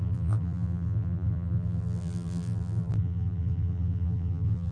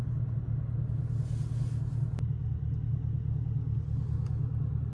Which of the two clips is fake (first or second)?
first